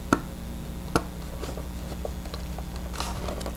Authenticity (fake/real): real